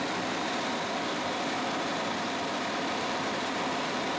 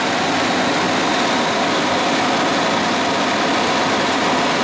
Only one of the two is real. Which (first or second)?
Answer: second